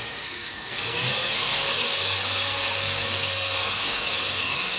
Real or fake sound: fake